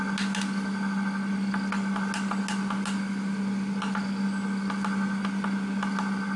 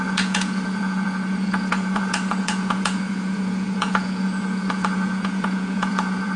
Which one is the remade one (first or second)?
second